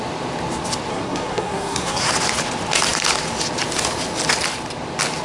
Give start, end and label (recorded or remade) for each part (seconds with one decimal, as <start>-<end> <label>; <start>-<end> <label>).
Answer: 0.0-0.9 recorded; 0.9-2.1 remade; 2.1-5.2 recorded